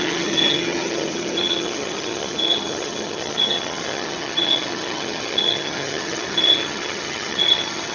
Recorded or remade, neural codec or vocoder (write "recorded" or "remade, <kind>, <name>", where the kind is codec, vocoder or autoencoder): remade, vocoder, HiFi-GAN